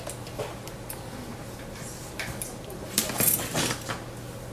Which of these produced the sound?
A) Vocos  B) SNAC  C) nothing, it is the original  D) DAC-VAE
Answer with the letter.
C